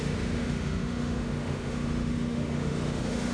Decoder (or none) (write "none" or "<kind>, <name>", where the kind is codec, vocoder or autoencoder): autoencoder, DAC-VAE